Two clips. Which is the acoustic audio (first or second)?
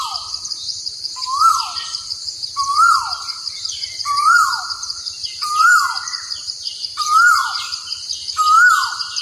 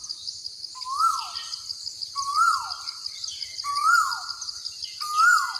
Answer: second